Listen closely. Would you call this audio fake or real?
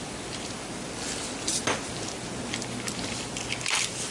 real